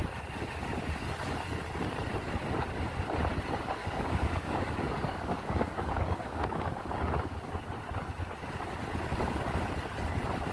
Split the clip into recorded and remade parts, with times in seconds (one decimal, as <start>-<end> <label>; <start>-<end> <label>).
0.0-3.8 recorded; 3.8-7.5 remade; 7.5-10.5 recorded